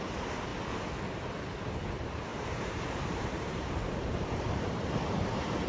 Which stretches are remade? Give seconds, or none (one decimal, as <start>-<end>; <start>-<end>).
0.0-0.5; 1.1-5.7